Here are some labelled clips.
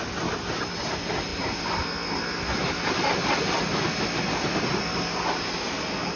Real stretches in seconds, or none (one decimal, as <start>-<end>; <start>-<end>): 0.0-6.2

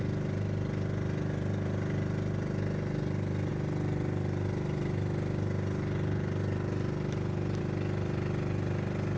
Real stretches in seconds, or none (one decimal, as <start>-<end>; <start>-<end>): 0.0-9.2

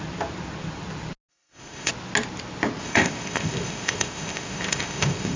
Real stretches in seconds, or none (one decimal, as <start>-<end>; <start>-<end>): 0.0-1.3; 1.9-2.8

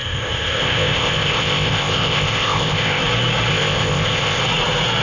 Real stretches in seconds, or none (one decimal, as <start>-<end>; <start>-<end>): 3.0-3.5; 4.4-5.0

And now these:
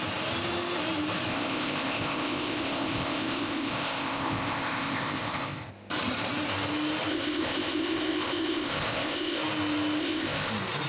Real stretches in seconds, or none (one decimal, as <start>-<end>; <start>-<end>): 0.0-1.3; 5.7-7.1; 9.4-10.0; 10.5-10.9

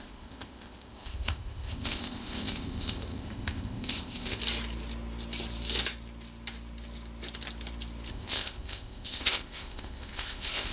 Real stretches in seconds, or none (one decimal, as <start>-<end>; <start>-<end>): 4.4-8.1

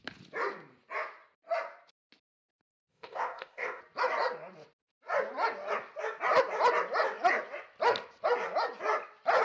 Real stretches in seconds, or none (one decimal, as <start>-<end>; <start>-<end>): 0.0-2.9; 3.8-9.4